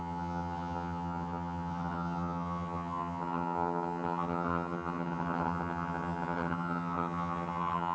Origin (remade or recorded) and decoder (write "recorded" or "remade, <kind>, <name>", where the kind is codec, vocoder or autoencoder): remade, vocoder, HiFi-GAN